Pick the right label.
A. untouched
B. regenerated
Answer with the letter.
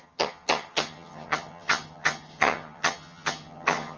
B